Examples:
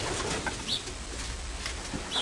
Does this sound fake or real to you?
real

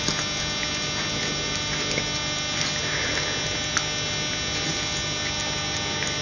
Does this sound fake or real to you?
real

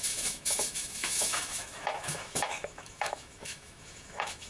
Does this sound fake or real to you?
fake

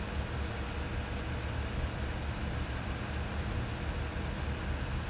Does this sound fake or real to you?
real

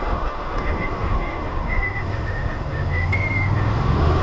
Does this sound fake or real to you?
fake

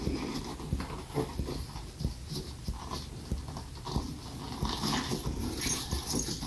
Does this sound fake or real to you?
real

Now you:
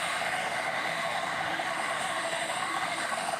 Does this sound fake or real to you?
fake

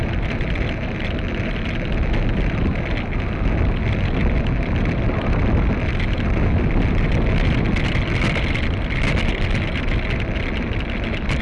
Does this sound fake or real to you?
real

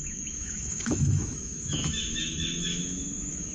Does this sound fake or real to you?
fake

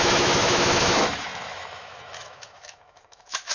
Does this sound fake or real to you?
fake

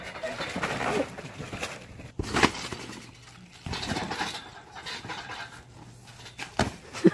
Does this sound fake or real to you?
real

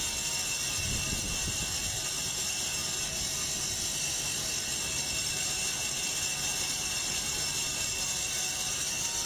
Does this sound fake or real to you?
real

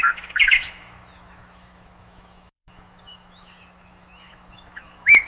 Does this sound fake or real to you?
fake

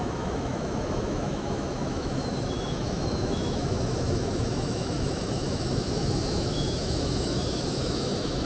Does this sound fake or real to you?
fake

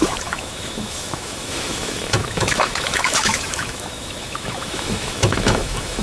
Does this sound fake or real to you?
fake